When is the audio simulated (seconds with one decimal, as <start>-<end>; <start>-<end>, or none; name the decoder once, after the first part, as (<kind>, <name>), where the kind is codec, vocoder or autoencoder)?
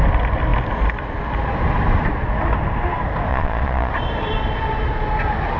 3.3-3.9 (vocoder, Vocos)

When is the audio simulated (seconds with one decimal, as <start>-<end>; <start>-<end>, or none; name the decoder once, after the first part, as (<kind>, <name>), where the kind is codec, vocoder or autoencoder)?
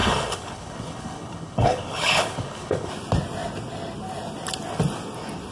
0.0-2.9 (codec, HILCodec)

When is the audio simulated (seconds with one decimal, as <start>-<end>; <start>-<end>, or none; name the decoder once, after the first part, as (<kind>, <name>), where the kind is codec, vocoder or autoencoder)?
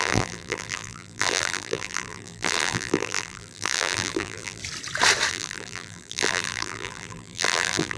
0.0-4.6 (vocoder, BigVGAN v2); 5.3-8.0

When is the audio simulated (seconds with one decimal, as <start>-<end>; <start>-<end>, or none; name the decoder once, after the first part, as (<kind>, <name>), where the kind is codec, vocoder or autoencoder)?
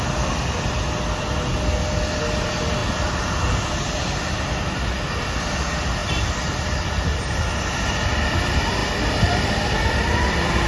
2.8-3.4 (vocoder, BigVGAN v2); 6.0-6.9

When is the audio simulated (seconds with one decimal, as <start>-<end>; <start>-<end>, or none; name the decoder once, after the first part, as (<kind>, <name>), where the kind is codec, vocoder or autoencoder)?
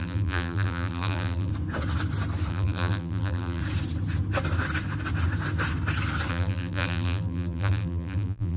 0.0-1.5 (vocoder, BigVGAN v2); 2.5-3.6; 6.3-8.6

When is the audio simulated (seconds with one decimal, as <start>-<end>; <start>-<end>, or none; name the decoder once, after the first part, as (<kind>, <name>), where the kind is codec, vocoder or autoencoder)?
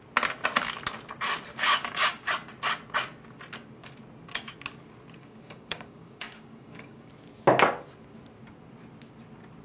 1.5-2.3 (codec, DAC); 5.2-7.1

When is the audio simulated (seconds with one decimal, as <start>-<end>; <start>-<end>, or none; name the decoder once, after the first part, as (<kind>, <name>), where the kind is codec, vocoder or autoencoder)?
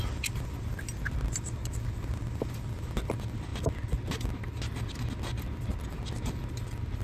none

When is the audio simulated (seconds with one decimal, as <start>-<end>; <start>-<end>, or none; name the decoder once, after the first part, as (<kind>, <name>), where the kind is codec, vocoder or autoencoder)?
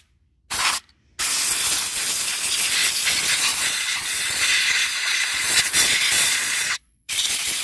3.5-7.1 (vocoder, Vocos)